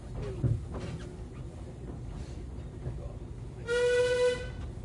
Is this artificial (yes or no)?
no